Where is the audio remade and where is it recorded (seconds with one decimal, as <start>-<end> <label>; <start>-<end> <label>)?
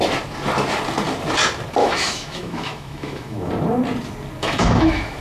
0.0-1.8 recorded; 1.8-3.5 remade; 3.5-4.4 recorded; 4.4-5.2 remade